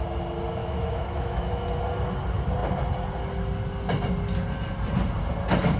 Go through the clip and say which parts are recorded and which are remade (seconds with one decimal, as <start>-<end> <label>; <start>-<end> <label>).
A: 0.0-0.6 recorded; 0.6-1.8 remade; 1.8-5.8 recorded